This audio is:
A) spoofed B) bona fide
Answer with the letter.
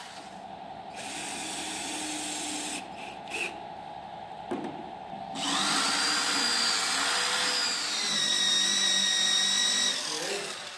B